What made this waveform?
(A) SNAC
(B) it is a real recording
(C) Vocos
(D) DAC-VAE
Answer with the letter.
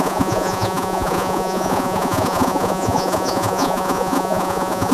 C